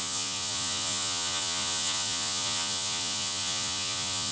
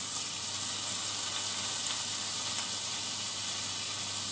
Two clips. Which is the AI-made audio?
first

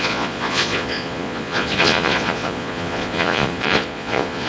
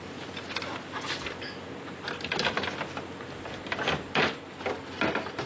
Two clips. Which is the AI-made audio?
first